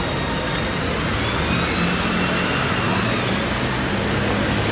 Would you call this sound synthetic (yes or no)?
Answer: no